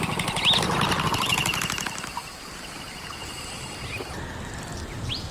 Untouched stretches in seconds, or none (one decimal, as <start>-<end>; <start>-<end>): 0.0-5.3